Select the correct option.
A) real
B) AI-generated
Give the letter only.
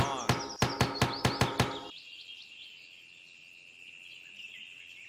A